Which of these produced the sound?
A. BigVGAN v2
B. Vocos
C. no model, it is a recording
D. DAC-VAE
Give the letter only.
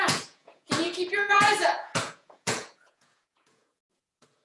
B